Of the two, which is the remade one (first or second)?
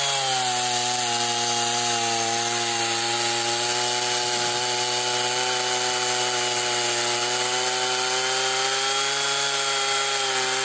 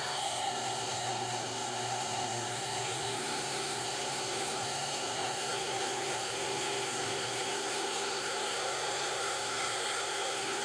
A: second